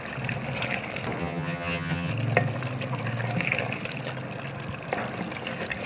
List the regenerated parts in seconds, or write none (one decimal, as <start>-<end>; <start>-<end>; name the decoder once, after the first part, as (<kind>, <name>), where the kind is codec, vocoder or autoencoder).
1.2-2.1 (vocoder, HiFi-GAN)